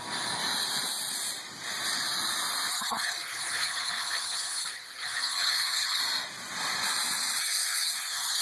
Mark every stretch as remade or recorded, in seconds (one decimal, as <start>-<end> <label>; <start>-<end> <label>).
0.0-2.7 recorded; 2.7-6.0 remade; 6.0-7.4 recorded; 7.4-8.4 remade